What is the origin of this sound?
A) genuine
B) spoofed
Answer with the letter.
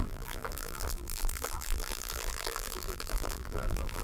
B